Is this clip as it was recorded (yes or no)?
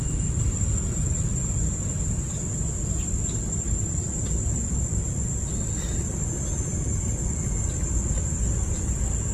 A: yes